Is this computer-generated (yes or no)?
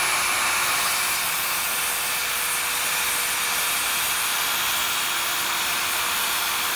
no